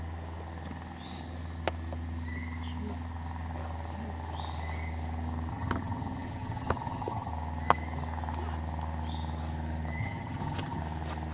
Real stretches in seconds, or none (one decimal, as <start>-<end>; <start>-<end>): 0.0-5.5; 7.3-10.0; 10.8-11.3